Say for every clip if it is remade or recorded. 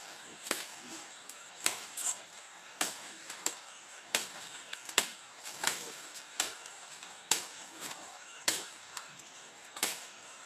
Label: remade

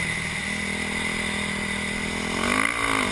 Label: recorded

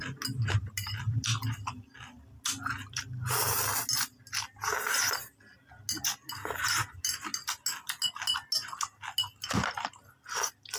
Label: recorded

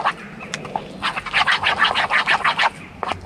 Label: recorded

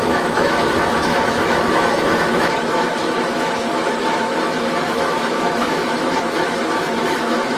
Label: remade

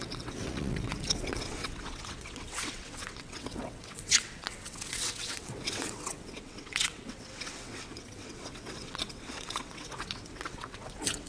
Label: remade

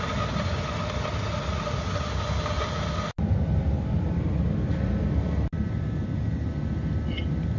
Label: recorded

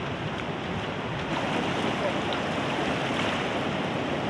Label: recorded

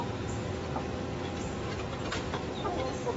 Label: recorded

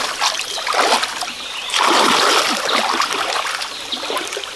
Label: recorded